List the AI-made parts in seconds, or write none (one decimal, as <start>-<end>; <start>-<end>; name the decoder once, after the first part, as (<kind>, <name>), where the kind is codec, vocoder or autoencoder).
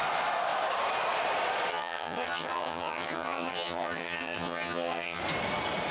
1.7-5.2 (vocoder, HiFi-GAN)